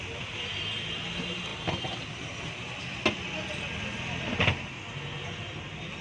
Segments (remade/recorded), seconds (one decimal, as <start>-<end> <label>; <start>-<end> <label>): 0.0-6.0 recorded